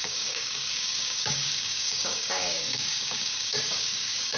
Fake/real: fake